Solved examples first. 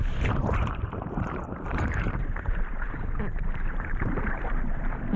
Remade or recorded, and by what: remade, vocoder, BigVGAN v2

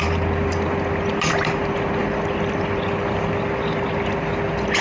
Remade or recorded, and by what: recorded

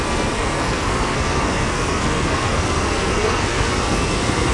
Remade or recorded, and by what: remade, codec, SNAC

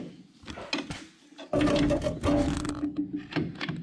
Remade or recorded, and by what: recorded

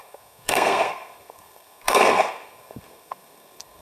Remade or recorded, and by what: remade, codec, SNAC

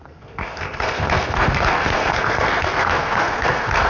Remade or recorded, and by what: remade, codec, SNAC